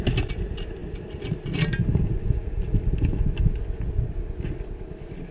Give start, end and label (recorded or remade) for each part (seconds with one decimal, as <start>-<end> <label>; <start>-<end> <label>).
0.0-5.3 recorded